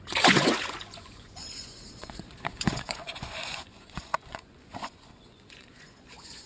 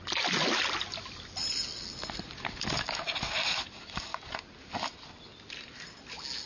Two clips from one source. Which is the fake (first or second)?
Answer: first